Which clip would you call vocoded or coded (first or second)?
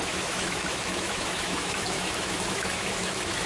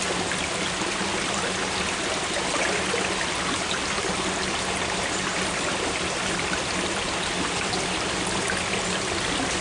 first